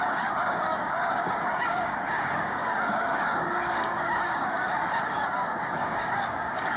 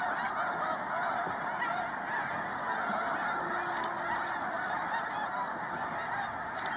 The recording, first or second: second